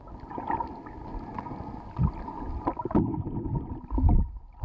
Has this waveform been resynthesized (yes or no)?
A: no